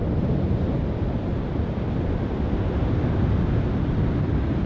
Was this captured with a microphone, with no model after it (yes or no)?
yes